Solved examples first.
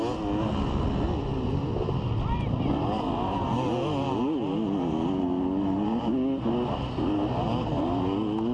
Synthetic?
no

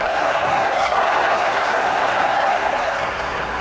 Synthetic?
yes